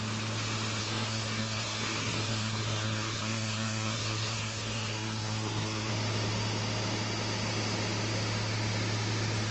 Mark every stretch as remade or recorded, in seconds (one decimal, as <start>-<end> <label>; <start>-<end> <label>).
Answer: 0.0-0.8 recorded; 0.8-5.9 remade; 5.9-9.5 recorded